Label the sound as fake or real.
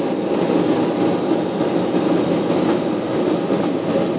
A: real